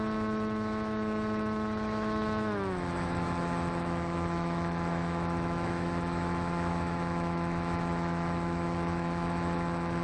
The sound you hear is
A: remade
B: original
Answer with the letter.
A